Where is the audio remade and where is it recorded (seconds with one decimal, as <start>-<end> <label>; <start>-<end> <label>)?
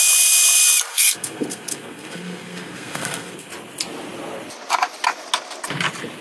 0.0-0.9 recorded; 0.9-3.5 remade; 3.5-6.2 recorded